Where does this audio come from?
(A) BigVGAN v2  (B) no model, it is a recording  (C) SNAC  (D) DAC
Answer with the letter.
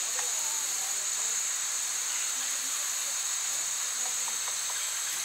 A